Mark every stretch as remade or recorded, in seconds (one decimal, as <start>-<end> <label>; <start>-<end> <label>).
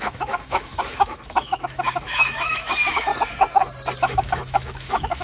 0.0-3.1 remade; 3.1-4.0 recorded; 4.0-5.2 remade